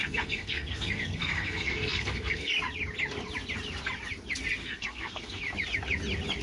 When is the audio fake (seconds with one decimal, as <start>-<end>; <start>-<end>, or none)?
0.0-2.5; 4.6-5.4